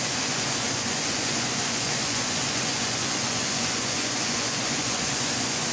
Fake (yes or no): yes